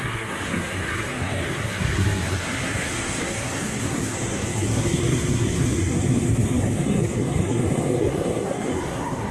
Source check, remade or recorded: remade